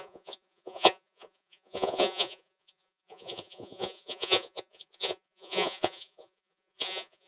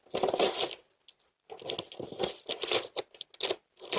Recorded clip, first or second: second